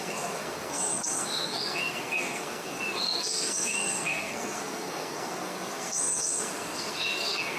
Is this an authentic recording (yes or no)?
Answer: no